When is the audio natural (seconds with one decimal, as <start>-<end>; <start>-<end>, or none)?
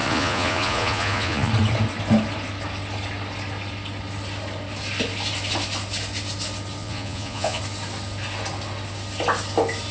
1.5-6.8; 7.6-9.9